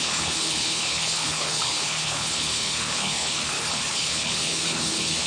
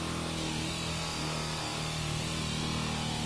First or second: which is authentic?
second